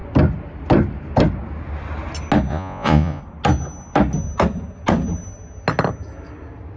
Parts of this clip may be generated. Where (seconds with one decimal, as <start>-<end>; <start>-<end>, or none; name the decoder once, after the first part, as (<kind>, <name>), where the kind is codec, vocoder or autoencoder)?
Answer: 2.5-3.2 (vocoder, Vocos)

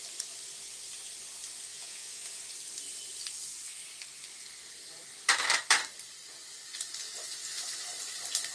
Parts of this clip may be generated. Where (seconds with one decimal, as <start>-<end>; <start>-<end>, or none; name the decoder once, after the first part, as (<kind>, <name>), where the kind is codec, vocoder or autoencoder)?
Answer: 1.7-2.4 (vocoder, Vocos)

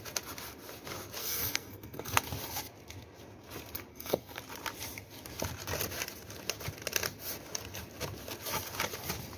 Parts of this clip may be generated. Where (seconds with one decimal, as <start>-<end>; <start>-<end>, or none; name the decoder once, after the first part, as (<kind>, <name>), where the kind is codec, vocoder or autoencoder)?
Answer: 1.2-2.2 (codec, SNAC); 3.9-4.4